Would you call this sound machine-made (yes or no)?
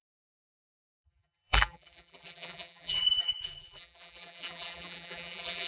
yes